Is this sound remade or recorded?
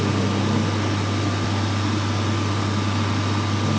recorded